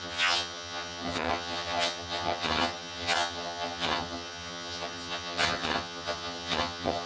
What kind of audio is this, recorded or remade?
remade